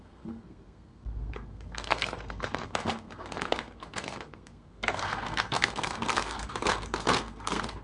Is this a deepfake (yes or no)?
yes